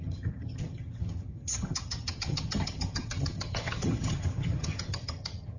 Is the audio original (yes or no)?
no